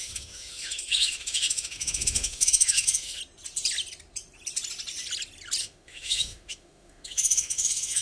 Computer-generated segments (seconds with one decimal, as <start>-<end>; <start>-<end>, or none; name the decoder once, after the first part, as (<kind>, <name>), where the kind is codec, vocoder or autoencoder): 0.0-3.2 (autoencoder, DAC-VAE); 5.6-8.0